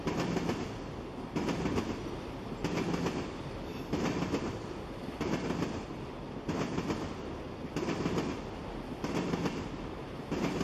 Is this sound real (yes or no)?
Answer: yes